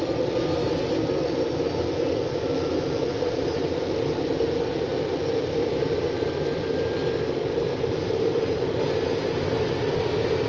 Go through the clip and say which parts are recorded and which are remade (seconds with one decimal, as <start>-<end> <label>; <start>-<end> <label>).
0.0-5.6 recorded; 5.6-6.1 remade; 6.1-7.7 recorded; 7.7-8.4 remade; 8.4-10.5 recorded